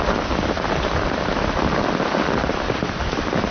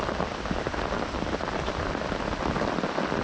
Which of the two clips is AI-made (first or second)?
first